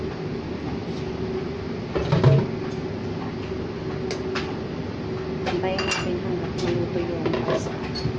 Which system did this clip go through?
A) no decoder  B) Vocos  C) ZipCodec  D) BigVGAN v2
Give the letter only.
A